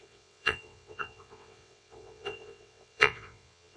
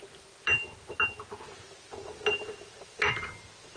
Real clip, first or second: second